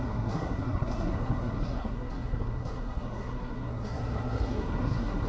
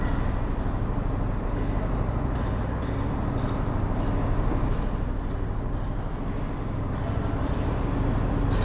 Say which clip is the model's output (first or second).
first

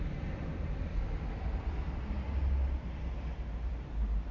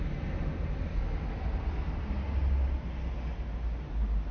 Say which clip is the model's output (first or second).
first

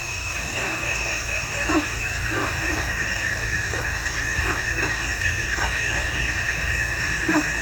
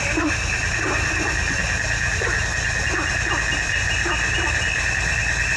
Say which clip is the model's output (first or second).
first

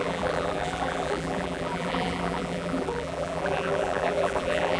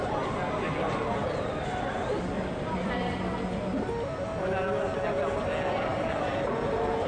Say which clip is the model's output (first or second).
first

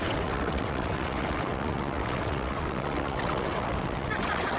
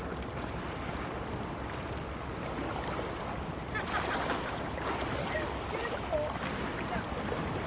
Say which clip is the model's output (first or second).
first